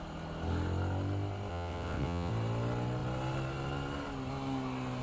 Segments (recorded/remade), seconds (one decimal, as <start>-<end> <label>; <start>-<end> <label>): 0.0-1.5 recorded; 1.5-2.3 remade; 2.3-5.0 recorded